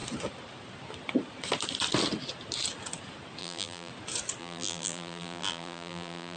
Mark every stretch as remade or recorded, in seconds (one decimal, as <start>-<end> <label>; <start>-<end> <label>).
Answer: 0.0-3.4 recorded; 3.4-3.9 remade; 3.9-4.4 recorded; 4.4-6.4 remade